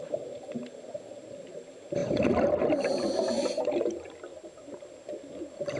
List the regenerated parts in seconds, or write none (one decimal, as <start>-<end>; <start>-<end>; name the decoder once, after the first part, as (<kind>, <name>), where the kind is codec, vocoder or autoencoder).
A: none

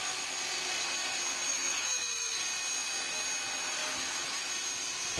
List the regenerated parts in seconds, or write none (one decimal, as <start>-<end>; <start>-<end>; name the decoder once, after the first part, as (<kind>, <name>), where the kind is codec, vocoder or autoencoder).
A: 1.5-2.4 (autoencoder, DAC-VAE); 3.8-4.5

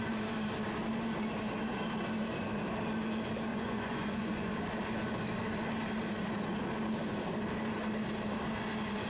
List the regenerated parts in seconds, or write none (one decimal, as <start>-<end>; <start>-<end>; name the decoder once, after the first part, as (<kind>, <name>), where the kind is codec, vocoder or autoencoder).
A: 3.5-4.5 (vocoder, Vocos)